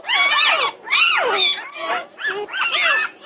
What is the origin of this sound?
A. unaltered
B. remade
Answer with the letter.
A